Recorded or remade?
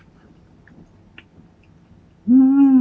recorded